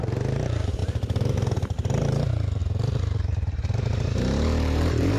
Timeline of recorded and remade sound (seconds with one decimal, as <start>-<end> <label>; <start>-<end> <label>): 0.0-5.2 remade